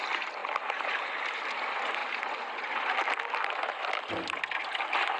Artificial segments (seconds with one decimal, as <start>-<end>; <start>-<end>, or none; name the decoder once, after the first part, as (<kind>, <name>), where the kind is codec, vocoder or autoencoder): none